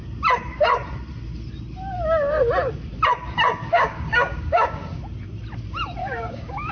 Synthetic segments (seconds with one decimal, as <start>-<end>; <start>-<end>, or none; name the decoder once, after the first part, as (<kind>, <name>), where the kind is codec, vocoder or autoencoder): 3.5-5.0 (codec, DAC); 6.0-6.7